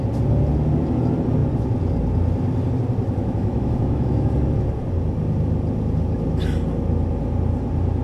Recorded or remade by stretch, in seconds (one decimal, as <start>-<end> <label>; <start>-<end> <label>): 0.0-3.2 recorded; 3.2-4.3 remade; 4.3-8.0 recorded